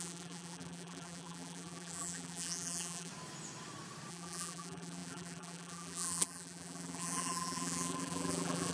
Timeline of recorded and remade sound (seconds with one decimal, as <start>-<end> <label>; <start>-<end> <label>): 0.0-3.1 remade; 3.1-4.1 recorded; 4.1-8.7 remade